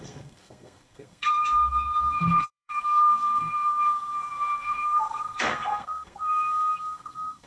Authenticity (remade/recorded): remade